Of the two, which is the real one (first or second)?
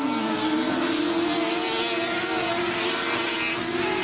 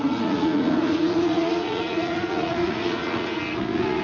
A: first